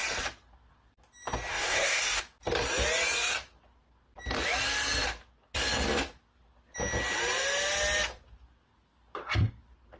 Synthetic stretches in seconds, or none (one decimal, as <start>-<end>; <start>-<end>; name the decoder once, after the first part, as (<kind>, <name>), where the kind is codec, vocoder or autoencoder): 1.5-2.2 (codec, SNAC)